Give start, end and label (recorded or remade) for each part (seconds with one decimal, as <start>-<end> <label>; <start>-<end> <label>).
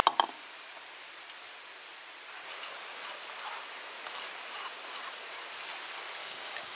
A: 0.0-6.2 recorded; 6.2-6.8 remade